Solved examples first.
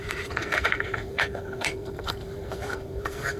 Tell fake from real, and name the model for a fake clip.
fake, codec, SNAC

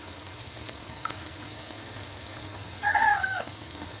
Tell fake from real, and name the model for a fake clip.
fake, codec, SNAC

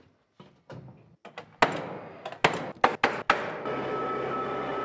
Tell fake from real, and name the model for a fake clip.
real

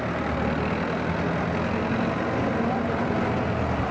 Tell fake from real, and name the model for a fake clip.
real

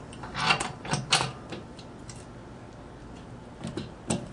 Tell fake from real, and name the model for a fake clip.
real